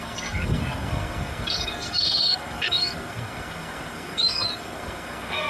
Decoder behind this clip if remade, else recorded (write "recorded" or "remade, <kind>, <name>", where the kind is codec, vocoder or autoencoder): remade, codec, SNAC